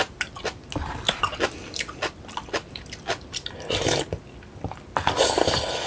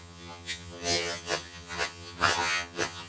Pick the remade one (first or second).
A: second